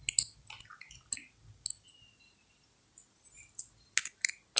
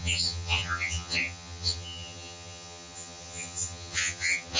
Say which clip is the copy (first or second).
second